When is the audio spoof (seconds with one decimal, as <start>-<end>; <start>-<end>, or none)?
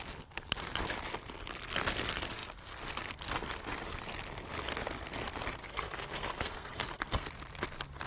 5.6-7.3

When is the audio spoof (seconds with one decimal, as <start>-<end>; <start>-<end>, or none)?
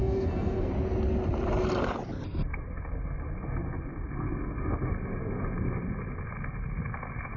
0.0-0.7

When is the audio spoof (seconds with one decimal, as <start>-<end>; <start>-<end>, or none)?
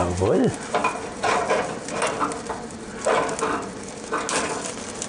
none